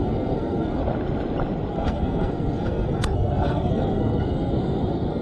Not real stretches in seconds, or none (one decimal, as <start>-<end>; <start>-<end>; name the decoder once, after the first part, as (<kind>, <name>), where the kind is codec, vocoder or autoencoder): 0.0-0.8 (codec, SNAC); 1.7-5.2